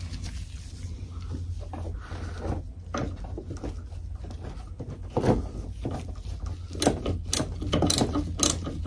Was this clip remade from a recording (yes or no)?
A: no